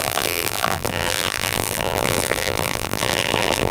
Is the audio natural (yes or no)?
no